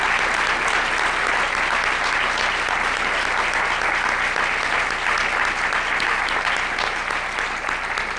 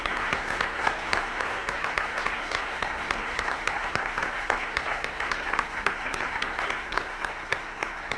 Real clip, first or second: first